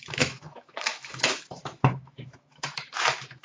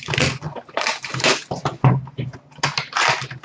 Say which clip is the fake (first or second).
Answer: first